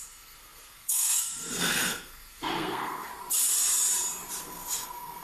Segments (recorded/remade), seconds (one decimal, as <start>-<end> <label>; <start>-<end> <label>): 0.0-3.1 remade; 3.1-4.4 recorded; 4.4-5.2 remade